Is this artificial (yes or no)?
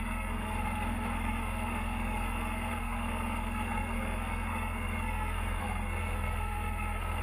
yes